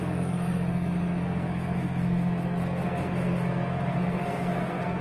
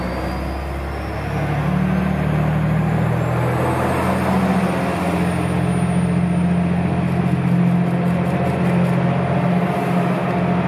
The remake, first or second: first